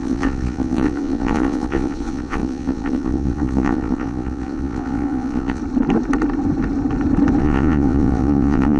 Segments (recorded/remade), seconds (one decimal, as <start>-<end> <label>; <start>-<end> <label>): 0.0-5.6 remade; 5.6-7.4 recorded; 7.4-8.8 remade